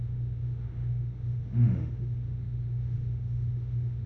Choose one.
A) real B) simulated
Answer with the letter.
B